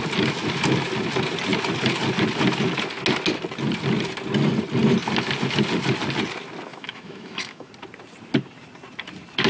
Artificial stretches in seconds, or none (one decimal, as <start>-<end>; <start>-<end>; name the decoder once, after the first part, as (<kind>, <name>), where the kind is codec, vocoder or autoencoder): 6.7-7.7 (autoencoder, DAC-VAE)